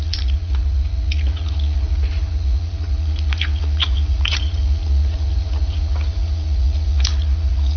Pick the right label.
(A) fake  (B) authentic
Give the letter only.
A